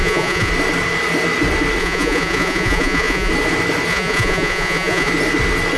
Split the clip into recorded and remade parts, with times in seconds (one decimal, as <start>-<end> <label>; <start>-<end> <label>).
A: 0.0-0.5 remade; 0.5-1.8 recorded; 1.8-3.3 remade; 3.3-3.9 recorded; 3.9-5.1 remade; 5.1-5.8 recorded